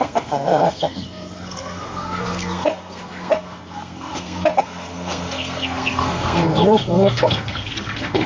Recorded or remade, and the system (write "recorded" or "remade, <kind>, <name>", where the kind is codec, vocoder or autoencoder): remade, codec, SNAC